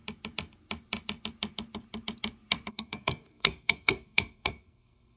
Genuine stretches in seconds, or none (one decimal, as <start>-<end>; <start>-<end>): 0.0-2.7